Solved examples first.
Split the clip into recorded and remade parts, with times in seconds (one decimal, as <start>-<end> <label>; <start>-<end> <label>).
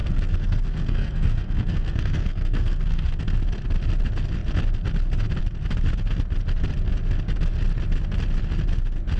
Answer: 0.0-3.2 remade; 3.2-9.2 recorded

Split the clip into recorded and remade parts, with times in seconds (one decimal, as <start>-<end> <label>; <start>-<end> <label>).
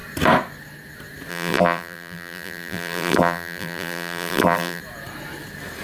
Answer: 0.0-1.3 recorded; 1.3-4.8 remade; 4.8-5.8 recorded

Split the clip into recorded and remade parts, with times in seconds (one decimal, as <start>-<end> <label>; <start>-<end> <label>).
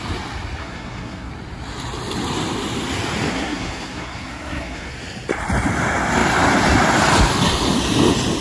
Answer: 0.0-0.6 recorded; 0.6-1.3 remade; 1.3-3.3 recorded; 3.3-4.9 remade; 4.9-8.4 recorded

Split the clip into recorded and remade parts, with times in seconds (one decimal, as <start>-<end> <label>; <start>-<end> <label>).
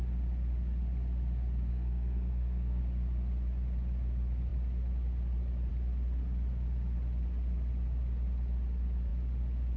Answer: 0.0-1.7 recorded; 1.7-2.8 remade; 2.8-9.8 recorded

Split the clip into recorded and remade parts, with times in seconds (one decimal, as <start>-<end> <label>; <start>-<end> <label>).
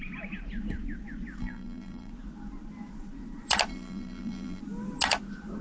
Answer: 0.0-1.4 recorded; 1.4-2.1 remade; 2.1-3.7 recorded; 3.7-4.6 remade; 4.6-5.6 recorded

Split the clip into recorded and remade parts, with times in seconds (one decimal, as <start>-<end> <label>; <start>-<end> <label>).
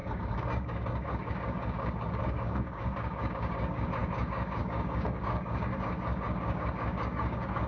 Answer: 0.0-7.7 remade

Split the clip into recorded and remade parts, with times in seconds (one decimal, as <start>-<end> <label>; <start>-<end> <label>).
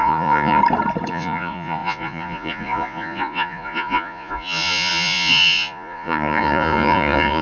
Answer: 0.0-0.6 remade; 0.6-1.1 recorded; 1.1-7.4 remade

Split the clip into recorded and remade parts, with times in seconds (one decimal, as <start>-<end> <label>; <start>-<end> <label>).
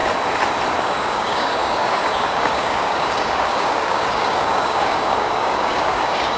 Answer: 0.0-0.8 recorded; 0.8-6.4 remade